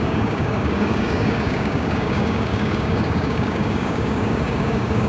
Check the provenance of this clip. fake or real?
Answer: fake